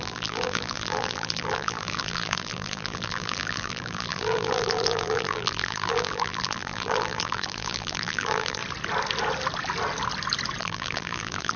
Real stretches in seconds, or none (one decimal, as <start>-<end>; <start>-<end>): 8.6-10.6